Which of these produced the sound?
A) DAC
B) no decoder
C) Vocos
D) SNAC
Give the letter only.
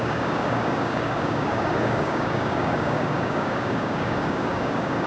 A